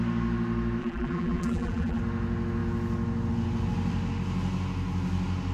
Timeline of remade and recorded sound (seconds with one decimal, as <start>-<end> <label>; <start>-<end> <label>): 0.0-0.8 recorded; 0.8-2.0 remade; 2.0-5.5 recorded